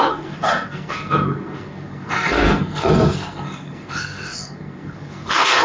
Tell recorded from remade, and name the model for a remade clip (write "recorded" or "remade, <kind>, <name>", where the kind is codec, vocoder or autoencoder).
remade, codec, SNAC